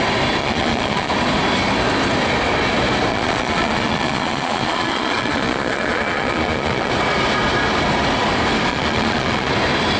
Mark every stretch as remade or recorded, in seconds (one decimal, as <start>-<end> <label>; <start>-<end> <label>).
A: 0.0-0.4 recorded; 0.4-1.1 remade; 1.1-3.1 recorded; 3.1-6.9 remade; 6.9-8.7 recorded; 8.7-9.5 remade; 9.5-10.0 recorded